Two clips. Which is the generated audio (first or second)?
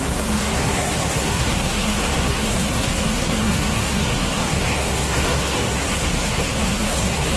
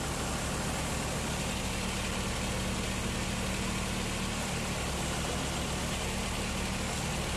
first